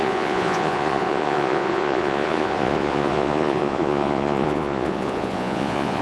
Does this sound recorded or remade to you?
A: remade